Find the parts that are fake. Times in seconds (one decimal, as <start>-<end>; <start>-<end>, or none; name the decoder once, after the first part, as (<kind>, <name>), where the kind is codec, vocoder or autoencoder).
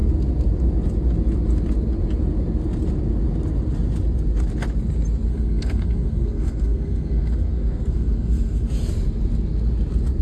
5.3-8.7 (codec, SNAC)